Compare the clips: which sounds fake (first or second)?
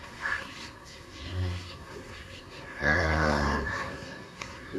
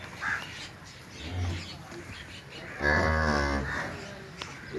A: first